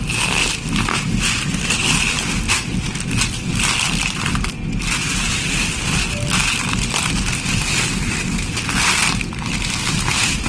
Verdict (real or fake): real